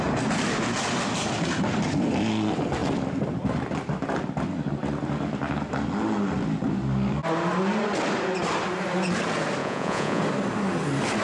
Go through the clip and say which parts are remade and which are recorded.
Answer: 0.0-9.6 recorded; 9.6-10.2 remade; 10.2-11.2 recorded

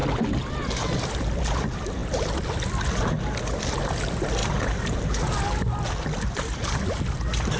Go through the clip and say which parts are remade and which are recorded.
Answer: 0.0-4.4 recorded; 4.4-5.2 remade; 5.2-7.6 recorded

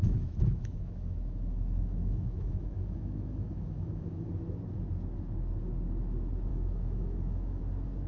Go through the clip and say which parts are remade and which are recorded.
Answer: 0.0-4.3 remade; 4.3-6.5 recorded; 6.5-7.6 remade; 7.6-8.1 recorded

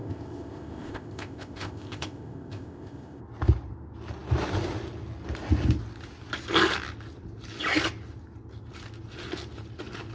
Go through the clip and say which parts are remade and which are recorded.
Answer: 0.0-3.2 remade; 3.2-10.1 recorded

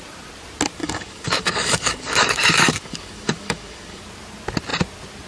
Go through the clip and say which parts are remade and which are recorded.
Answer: 0.0-0.8 recorded; 0.8-4.0 remade; 4.0-5.3 recorded

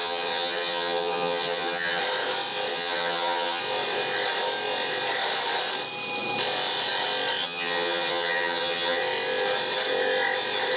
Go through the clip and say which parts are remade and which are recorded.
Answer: 0.0-2.0 remade; 2.0-2.7 recorded; 2.7-3.6 remade; 3.6-7.4 recorded; 7.4-9.0 remade; 9.0-10.8 recorded